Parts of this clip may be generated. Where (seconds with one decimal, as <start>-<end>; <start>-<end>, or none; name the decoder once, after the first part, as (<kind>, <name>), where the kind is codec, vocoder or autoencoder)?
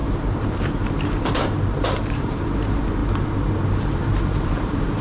0.0-3.0 (vocoder, BigVGAN v2); 3.8-5.0